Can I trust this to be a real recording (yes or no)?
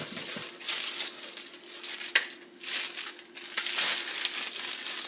yes